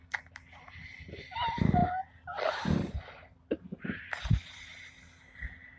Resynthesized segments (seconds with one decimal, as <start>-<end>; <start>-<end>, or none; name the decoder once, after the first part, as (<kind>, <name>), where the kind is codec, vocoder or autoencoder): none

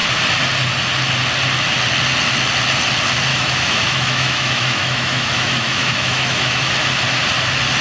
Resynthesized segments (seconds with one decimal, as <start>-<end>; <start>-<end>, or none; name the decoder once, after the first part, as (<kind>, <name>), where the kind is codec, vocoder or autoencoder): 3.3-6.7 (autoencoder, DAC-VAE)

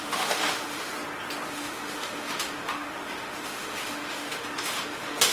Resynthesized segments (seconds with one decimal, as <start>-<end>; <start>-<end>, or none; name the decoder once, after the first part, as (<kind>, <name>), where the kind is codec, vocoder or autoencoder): 0.0-0.9 (autoencoder, DAC-VAE); 1.5-5.3

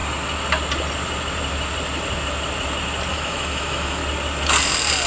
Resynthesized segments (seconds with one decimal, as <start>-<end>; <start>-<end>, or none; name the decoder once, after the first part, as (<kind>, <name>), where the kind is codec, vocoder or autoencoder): 3.1-4.0 (autoencoder, DAC-VAE)

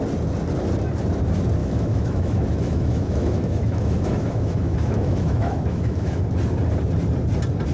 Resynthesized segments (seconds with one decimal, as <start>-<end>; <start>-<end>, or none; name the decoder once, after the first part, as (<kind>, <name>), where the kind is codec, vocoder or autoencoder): 1.6-6.2 (autoencoder, DAC-VAE)

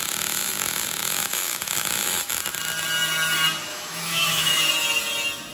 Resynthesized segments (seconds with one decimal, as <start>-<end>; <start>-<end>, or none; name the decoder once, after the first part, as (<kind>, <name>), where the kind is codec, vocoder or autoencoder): 1.0-2.2 (autoencoder, DAC-VAE); 3.7-4.6

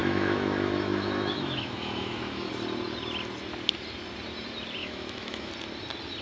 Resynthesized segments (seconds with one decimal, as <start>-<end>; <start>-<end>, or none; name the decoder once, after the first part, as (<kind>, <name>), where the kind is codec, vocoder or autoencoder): 0.0-2.5 (autoencoder, DAC-VAE); 4.8-5.5

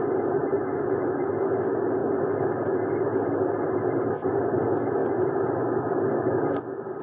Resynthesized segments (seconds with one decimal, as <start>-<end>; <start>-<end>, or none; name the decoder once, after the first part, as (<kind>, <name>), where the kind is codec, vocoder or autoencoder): 0.6-1.3 (autoencoder, DAC-VAE)